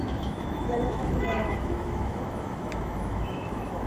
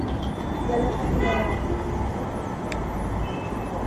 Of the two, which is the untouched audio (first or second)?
second